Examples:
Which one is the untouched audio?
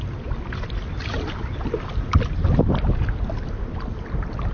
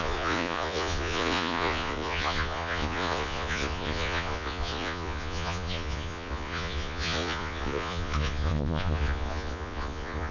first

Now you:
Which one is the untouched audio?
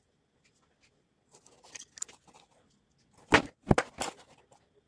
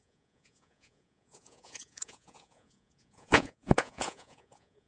first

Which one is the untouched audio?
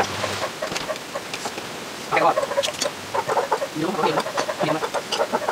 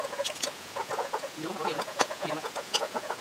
first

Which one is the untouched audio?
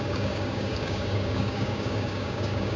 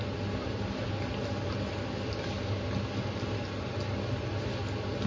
second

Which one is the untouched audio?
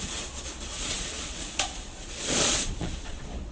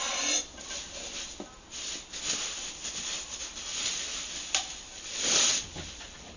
second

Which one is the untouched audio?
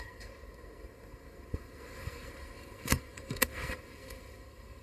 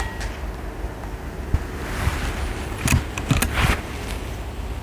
second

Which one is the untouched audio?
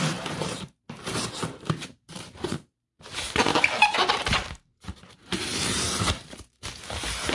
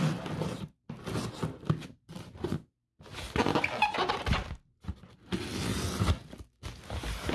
second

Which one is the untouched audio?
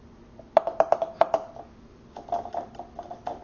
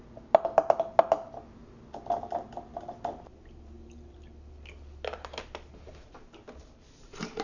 second